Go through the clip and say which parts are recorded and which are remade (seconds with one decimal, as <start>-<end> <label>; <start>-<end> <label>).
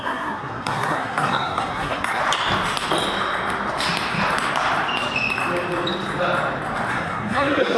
0.0-2.2 remade; 2.2-6.9 recorded; 6.9-7.8 remade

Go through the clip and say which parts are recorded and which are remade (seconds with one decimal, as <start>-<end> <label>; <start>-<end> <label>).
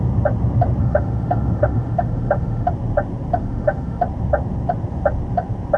0.0-0.8 recorded; 0.8-2.7 remade; 2.7-3.4 recorded; 3.4-4.0 remade; 4.0-5.8 recorded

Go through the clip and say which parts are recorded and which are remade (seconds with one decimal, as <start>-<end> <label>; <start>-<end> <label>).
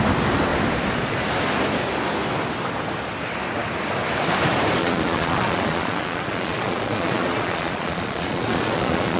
0.0-4.8 recorded; 4.8-9.2 remade